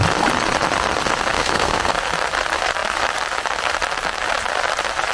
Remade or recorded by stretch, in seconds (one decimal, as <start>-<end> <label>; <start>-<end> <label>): 0.0-1.3 recorded; 1.3-1.9 remade; 1.9-5.1 recorded